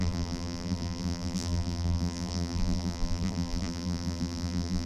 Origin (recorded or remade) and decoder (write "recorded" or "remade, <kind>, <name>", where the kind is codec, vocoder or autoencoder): remade, vocoder, BigVGAN v2